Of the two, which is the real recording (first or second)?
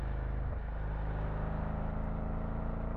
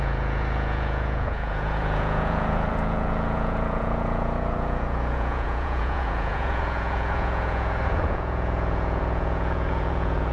first